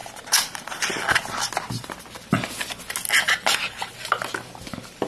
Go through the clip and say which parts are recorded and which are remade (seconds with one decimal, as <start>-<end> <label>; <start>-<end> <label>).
0.0-5.1 recorded